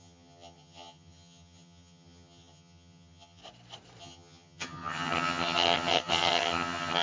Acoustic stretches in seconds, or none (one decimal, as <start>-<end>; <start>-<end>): 3.4-4.0